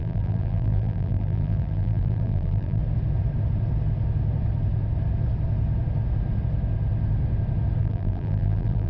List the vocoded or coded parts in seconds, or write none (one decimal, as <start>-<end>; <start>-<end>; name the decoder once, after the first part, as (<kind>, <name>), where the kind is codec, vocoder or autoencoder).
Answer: 0.0-2.8 (vocoder, BigVGAN v2); 7.8-8.9